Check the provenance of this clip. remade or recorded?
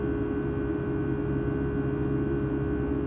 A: recorded